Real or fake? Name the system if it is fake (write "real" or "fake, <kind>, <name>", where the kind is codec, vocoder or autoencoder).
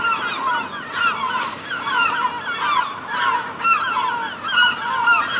real